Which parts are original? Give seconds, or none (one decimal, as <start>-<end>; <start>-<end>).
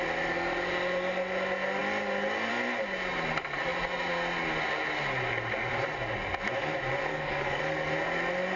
0.0-7.1; 7.6-8.6